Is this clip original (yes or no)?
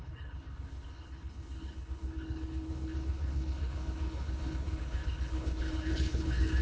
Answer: no